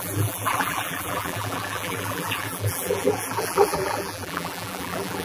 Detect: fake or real fake